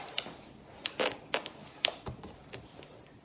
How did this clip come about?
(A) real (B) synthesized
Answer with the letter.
A